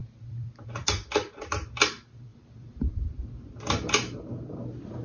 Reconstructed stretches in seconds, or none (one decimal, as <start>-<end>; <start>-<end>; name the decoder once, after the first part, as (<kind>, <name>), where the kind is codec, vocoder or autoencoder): 0.0-1.4 (vocoder, BigVGAN v2); 2.3-3.3

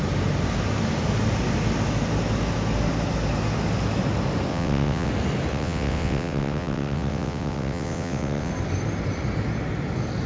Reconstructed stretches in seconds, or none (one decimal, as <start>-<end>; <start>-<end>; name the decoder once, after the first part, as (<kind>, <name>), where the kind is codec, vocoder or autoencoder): 4.5-5.1 (vocoder, WaveNeXt); 5.5-8.5

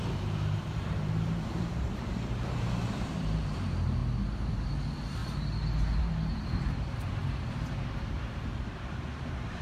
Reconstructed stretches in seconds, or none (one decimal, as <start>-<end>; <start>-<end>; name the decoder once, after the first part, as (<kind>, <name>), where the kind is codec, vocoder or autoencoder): 0.0-4.0 (vocoder, BigVGAN v2); 4.5-5.2; 6.0-9.6

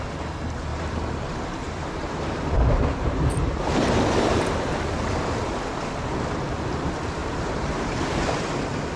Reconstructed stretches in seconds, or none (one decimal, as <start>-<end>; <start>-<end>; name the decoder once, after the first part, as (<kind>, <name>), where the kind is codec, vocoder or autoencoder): 0.7-4.7 (vocoder, BigVGAN v2); 7.2-8.6

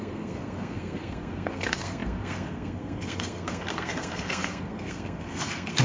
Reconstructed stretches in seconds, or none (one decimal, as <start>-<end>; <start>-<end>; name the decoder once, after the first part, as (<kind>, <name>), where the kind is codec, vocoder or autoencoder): 0.0-5.8 (codec, SNAC)

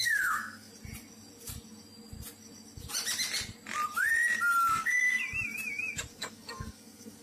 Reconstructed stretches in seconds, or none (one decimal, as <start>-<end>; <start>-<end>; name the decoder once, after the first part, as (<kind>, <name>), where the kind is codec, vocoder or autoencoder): 0.0-0.7 (codec, SNAC); 4.7-5.2; 6.1-7.2

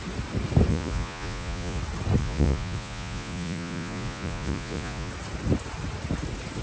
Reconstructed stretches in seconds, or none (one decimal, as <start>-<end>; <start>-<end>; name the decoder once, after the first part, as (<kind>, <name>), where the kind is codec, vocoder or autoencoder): 0.7-1.8 (vocoder, Vocos); 2.2-5.1

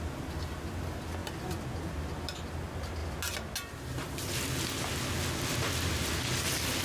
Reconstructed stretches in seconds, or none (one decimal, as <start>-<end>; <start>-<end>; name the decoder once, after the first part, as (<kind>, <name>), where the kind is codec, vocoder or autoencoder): none